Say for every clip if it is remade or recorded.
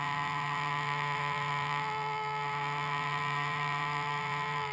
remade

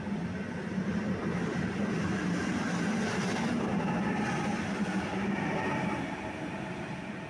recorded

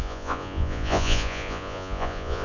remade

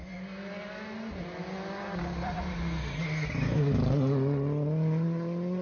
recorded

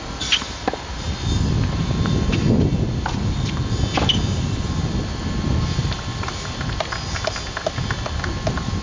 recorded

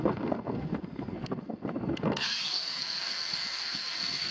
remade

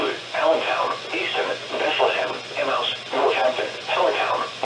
remade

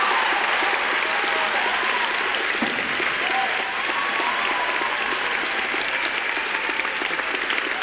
recorded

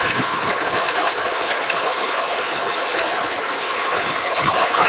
remade